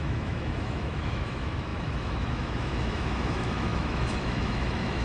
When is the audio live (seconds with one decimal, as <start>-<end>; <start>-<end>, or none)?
none

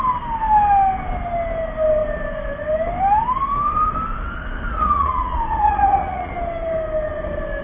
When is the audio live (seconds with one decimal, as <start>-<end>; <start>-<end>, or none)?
0.0-4.7; 6.3-7.6

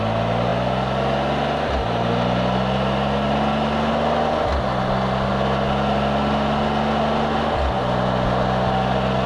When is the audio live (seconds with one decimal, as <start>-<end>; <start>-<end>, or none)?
0.0-9.3

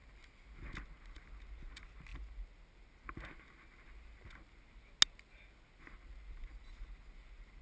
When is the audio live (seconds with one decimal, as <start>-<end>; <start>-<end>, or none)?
0.0-7.6

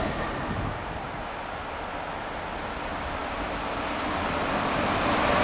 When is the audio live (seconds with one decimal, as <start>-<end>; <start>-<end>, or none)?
0.0-5.4